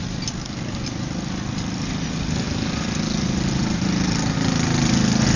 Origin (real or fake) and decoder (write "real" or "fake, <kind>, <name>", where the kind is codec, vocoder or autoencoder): real